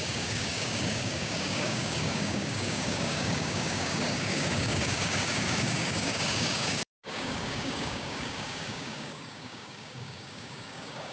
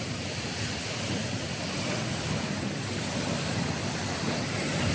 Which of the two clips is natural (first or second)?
second